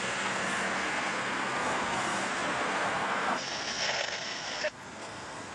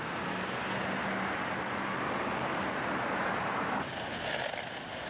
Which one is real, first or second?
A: second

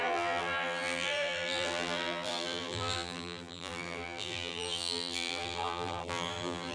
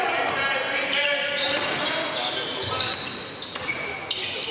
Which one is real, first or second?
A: second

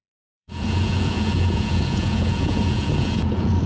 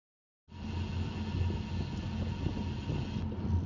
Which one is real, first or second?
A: second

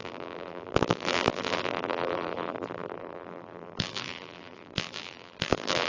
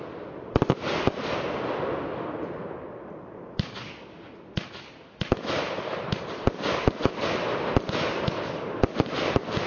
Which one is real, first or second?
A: second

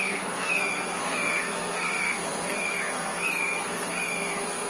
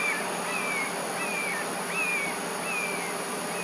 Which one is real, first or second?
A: second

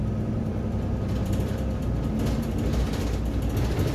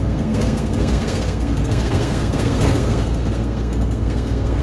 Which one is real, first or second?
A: first